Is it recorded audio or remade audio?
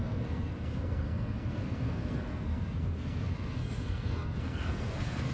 remade